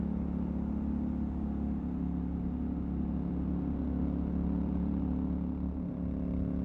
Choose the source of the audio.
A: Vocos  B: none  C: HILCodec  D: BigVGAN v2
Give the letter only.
B